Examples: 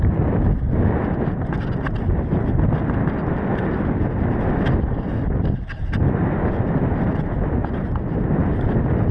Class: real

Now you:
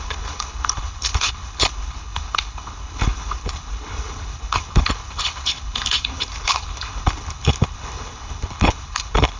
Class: fake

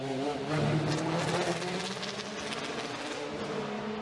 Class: real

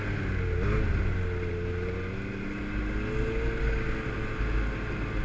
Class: real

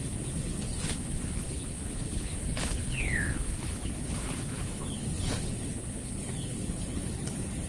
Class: fake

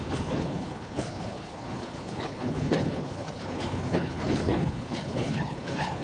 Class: fake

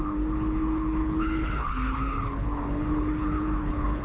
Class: fake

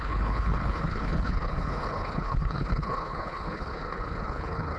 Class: fake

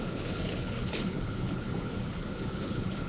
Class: fake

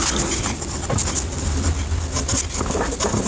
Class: real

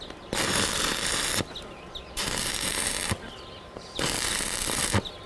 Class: real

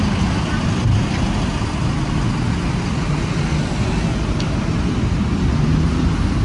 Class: real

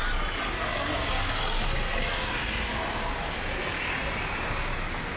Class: real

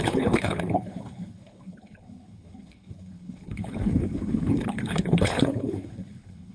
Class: fake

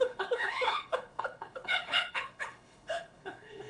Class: fake